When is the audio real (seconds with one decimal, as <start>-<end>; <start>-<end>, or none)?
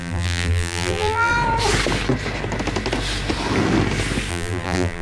1.3-4.3